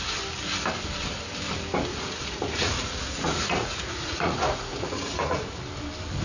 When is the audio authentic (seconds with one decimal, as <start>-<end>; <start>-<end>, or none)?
0.0-1.9; 5.6-6.2